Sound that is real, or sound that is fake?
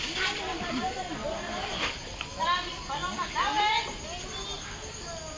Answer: real